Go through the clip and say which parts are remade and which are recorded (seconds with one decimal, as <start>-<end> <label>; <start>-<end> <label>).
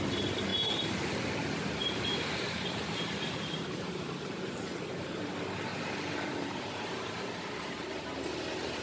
0.0-0.5 recorded; 0.5-1.1 remade; 1.1-1.8 recorded; 1.8-5.3 remade; 5.3-5.7 recorded; 5.7-7.9 remade; 7.9-8.8 recorded